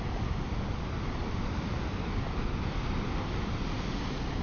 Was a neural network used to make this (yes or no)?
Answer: no